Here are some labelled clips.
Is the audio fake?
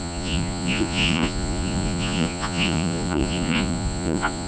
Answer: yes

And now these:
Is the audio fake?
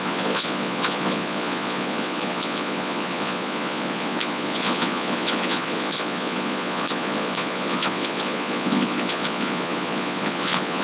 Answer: yes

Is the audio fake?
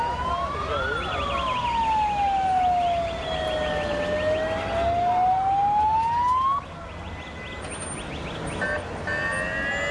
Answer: no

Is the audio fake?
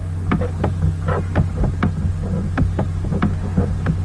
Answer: no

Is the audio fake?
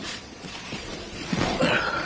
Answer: yes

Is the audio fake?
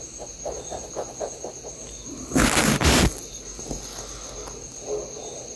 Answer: no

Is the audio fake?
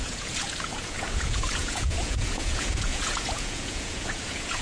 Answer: yes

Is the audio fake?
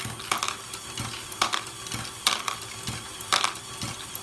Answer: no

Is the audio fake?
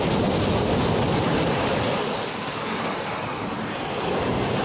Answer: no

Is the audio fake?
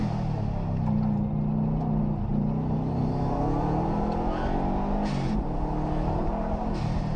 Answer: no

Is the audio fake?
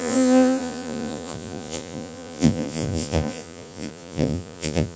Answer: yes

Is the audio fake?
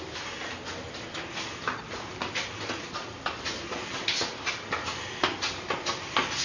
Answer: no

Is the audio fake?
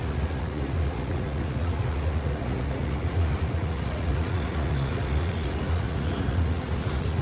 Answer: yes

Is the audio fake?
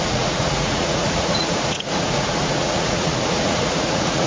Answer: yes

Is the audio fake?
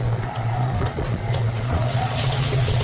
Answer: yes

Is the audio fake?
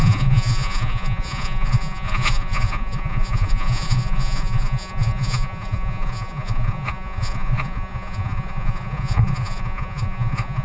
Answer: yes